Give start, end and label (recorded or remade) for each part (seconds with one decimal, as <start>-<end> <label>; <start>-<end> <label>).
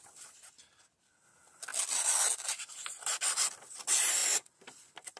0.0-4.2 recorded; 4.2-5.2 remade